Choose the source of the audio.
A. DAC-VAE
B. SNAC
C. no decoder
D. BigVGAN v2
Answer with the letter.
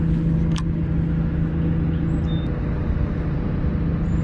C